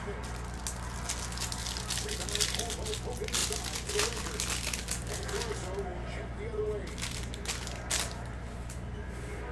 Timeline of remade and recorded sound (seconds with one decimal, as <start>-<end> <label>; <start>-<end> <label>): 0.0-9.5 recorded